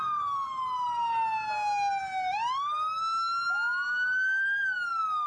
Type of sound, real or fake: real